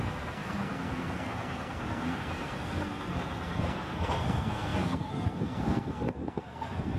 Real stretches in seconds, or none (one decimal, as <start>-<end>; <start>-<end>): none